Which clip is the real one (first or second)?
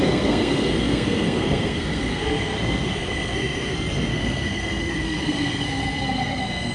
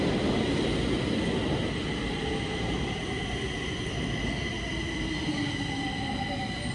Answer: second